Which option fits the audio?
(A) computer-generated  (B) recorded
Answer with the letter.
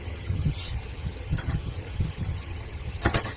A